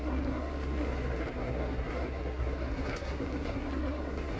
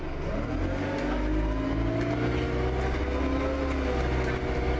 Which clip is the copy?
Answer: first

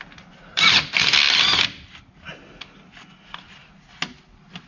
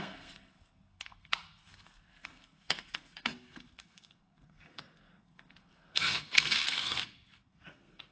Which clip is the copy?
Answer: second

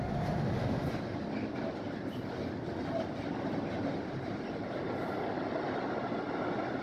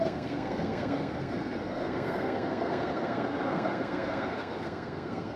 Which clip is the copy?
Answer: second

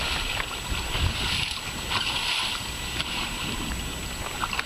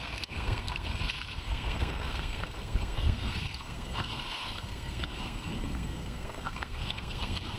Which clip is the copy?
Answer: second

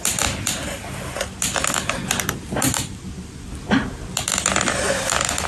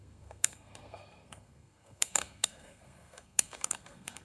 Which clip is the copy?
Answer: second